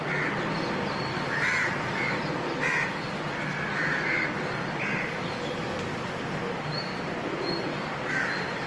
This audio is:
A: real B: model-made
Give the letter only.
A